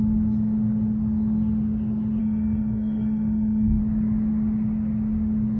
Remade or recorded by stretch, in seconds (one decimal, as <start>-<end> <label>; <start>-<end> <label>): 0.0-2.2 recorded; 2.2-3.8 remade; 3.8-5.6 recorded